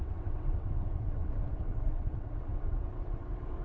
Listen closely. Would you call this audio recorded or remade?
remade